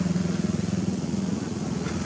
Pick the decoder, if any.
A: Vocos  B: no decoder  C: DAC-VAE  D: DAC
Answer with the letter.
A